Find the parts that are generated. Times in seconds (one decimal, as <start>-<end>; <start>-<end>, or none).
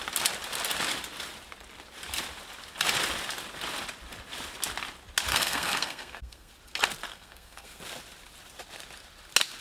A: 5.3-6.5; 7.1-7.8